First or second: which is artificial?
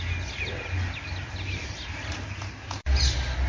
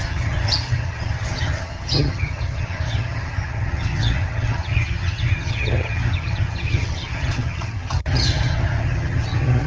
second